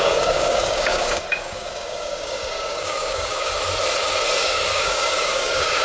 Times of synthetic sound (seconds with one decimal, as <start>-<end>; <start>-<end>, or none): 0.0-3.5; 4.4-5.8